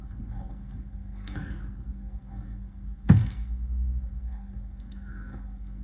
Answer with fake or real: fake